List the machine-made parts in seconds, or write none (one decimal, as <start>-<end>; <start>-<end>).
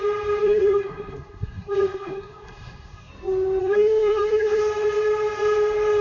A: 0.4-3.1; 3.6-4.6